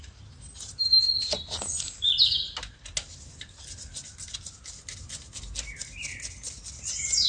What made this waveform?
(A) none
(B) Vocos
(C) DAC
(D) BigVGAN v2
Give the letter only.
A